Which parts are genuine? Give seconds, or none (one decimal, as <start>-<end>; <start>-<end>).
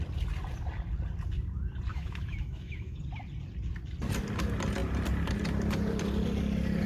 0.0-1.9; 3.0-6.9